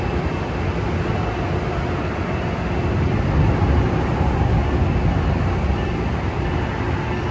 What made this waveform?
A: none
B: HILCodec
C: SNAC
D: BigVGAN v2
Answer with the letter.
A